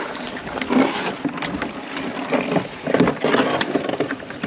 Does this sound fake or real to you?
real